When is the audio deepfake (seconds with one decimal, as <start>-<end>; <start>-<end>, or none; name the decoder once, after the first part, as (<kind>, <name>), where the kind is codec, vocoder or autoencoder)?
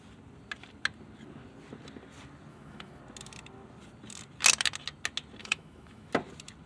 2.5-3.0 (autoencoder, DAC-VAE); 5.4-6.1